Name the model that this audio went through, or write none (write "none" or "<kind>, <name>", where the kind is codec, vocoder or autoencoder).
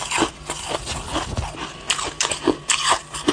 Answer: none